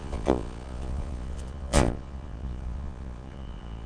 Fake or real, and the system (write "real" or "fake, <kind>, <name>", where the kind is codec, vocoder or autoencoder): fake, vocoder, Vocos